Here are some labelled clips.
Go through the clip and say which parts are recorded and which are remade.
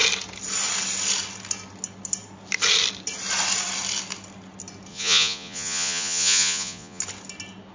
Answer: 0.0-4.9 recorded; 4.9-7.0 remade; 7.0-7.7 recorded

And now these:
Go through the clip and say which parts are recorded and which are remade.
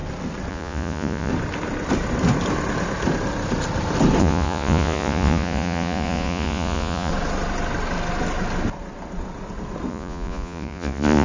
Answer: 0.0-0.5 recorded; 0.5-1.3 remade; 1.3-4.2 recorded; 4.2-7.1 remade; 7.1-9.9 recorded; 9.9-11.2 remade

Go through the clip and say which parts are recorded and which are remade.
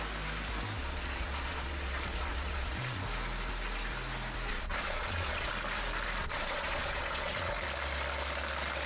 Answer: 0.0-0.8 recorded; 0.8-3.0 remade; 3.0-4.5 recorded; 4.5-5.5 remade; 5.5-6.2 recorded; 6.2-7.5 remade; 7.5-8.9 recorded